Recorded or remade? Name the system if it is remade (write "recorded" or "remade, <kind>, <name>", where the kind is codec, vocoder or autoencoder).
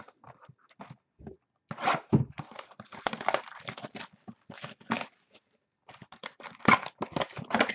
recorded